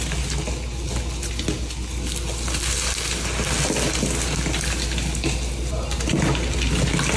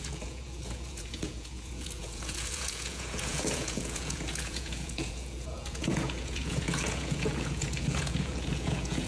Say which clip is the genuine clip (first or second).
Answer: first